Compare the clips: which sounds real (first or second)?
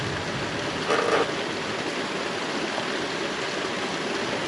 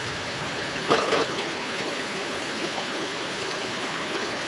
first